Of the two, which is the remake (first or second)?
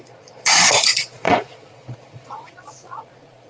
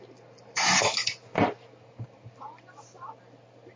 first